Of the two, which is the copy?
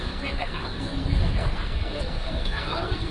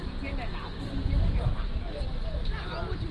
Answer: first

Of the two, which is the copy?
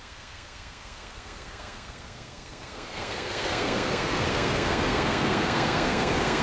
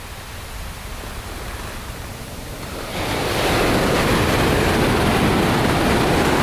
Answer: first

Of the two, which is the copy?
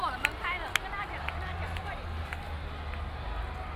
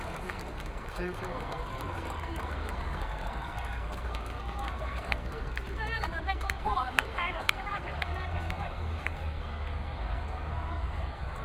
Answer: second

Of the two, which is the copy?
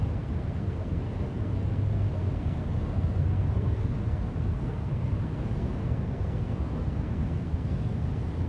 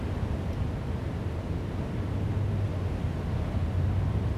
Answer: first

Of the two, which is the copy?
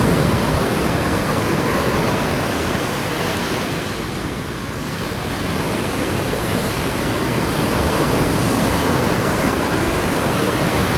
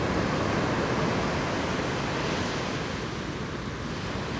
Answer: first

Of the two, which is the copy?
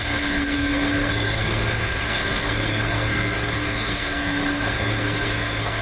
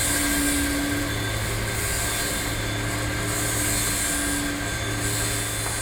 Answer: first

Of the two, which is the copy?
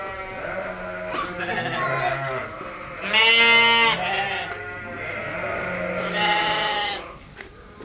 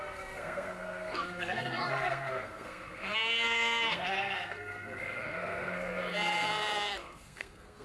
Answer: second